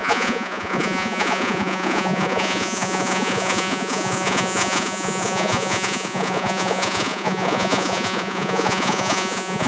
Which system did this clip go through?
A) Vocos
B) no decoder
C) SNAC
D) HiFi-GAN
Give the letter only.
A